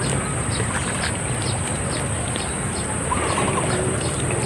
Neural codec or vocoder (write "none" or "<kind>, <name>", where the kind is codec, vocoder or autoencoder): none